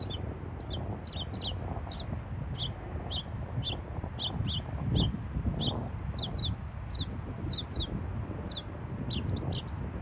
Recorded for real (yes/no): yes